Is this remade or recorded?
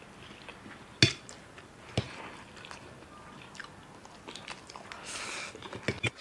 recorded